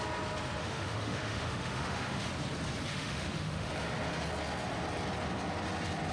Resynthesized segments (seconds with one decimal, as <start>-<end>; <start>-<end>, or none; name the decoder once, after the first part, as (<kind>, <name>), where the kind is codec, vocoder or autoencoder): 0.6-2.3 (autoencoder, DAC-VAE); 2.9-3.7